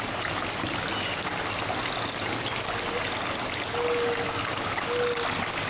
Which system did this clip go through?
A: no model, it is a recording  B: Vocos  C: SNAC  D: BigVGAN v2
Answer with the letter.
A